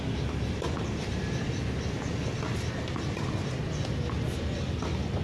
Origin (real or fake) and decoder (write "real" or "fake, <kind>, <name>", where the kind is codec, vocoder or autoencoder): real